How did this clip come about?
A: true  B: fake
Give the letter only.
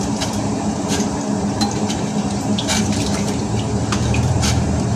B